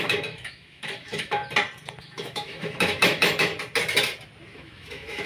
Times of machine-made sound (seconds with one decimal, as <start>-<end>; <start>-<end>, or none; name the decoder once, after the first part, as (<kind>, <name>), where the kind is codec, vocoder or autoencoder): 0.0-1.4 (autoencoder, DAC-VAE); 2.0-3.5; 4.5-5.3